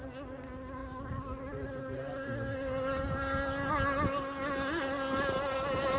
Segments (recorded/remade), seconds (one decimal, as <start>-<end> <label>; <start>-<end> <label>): 0.0-6.0 recorded